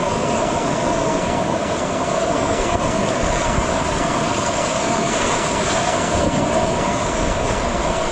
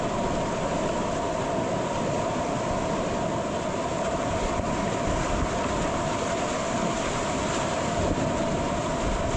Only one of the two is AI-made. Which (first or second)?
first